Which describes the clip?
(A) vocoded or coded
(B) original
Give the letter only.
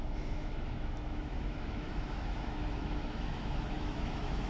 A